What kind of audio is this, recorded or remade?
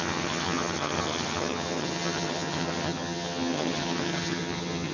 remade